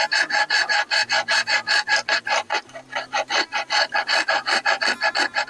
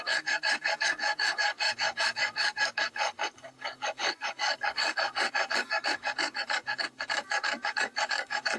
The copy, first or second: second